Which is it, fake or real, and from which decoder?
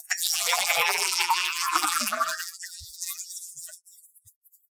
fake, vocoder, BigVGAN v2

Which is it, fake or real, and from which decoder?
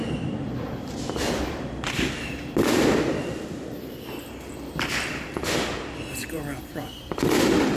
real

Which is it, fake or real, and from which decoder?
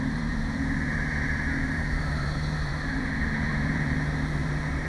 fake, vocoder, BigVGAN v2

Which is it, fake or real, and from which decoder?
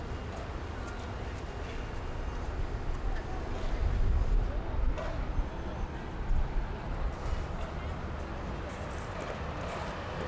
real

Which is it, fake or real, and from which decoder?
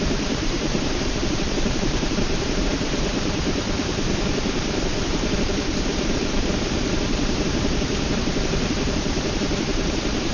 fake, vocoder, BigVGAN v2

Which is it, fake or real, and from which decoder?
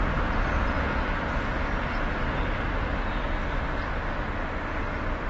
real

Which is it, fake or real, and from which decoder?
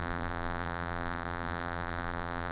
fake, vocoder, BigVGAN v2